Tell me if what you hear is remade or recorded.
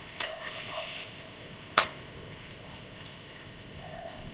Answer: remade